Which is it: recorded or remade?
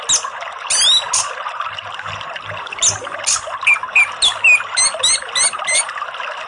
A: recorded